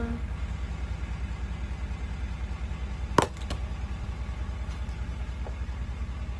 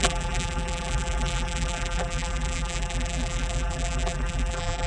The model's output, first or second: second